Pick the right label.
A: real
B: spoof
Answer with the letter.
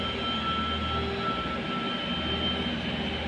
A